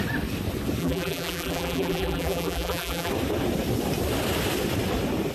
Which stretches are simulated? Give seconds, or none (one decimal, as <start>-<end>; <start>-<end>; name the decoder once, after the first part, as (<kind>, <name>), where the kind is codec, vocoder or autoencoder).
0.8-3.1 (vocoder, BigVGAN v2)